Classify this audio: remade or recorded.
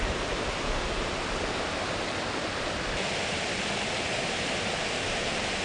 recorded